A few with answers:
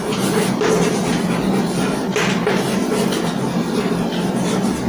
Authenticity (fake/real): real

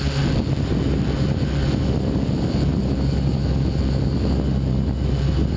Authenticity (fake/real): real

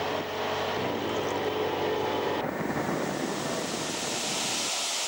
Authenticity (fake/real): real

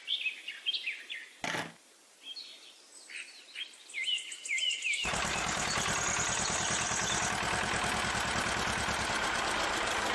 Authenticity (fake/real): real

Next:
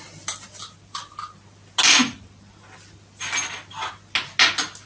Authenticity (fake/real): real